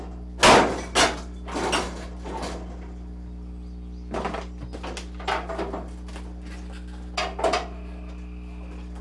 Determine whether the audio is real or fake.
real